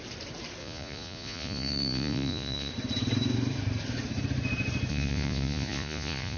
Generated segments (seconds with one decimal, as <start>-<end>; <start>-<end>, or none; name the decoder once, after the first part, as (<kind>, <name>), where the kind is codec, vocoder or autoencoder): 0.6-2.7 (vocoder, Vocos); 4.9-6.4